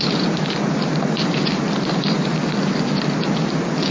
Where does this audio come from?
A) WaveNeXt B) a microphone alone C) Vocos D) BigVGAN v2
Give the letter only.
B